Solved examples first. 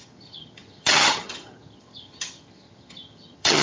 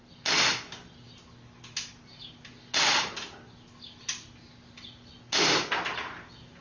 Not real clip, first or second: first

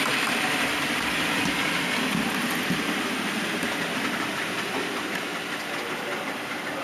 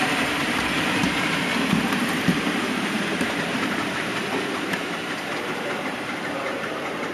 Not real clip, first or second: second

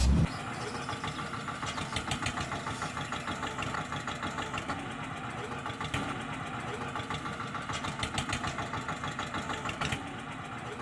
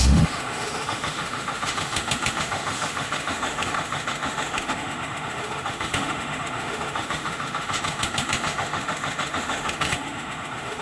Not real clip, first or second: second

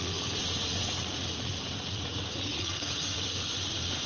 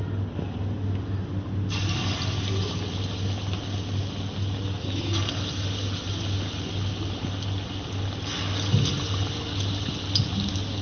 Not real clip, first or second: first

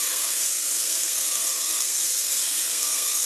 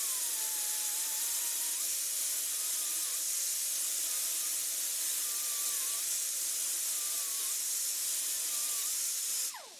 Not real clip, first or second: first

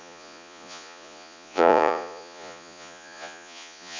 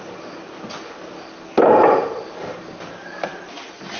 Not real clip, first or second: first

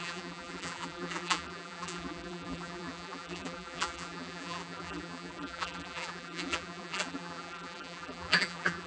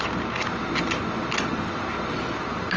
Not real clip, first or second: first